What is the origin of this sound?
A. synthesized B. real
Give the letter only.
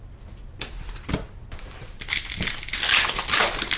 B